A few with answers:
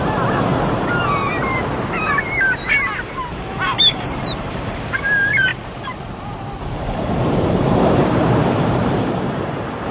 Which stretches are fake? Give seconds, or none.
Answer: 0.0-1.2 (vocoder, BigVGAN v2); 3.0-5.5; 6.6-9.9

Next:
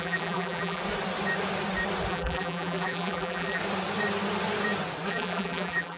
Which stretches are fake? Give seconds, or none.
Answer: 0.0-0.8 (vocoder, BigVGAN v2); 2.1-3.6; 5.1-6.0

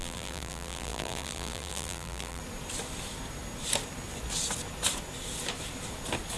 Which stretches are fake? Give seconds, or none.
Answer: 0.0-2.4 (vocoder, BigVGAN v2)

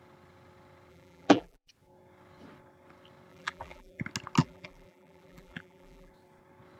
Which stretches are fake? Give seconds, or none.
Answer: 0.9-1.7 (vocoder, BigVGAN v2); 3.3-4.0; 4.4-6.1

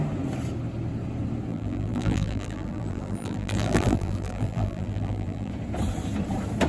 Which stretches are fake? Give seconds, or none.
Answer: 1.5-5.5 (vocoder, BigVGAN v2)

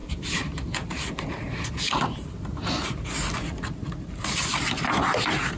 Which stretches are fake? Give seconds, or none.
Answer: 0.0-1.8 (vocoder, BigVGAN v2)

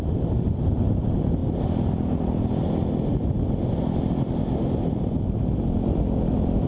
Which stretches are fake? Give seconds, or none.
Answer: 0.0-1.4 (vocoder, BigVGAN v2); 3.5-6.7

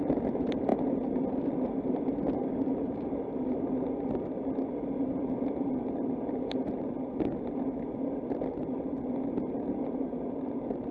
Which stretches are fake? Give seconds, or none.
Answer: none